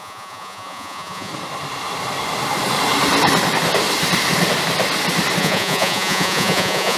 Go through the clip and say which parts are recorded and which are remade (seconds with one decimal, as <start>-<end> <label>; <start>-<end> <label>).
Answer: 0.0-1.3 remade; 1.3-5.4 recorded; 5.4-7.0 remade